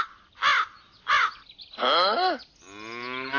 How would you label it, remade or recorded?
recorded